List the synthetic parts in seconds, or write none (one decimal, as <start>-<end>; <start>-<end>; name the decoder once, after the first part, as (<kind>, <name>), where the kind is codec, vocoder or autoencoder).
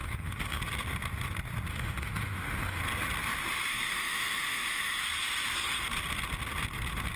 0.0-0.6 (autoencoder, DAC-VAE); 1.7-2.8; 3.7-5.0